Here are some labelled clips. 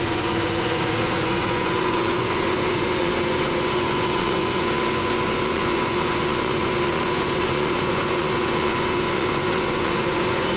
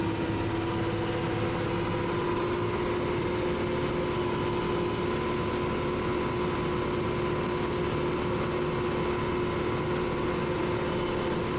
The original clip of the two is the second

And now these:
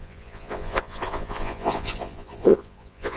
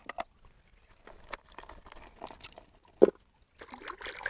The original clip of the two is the second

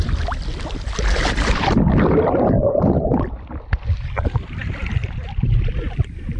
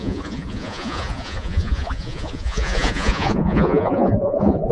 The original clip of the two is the first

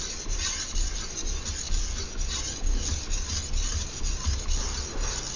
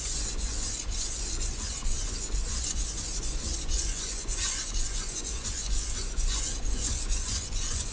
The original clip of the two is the first